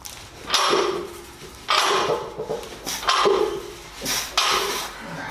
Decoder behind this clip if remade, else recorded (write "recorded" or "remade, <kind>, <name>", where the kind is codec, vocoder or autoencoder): recorded